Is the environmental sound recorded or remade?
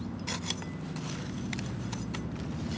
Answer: recorded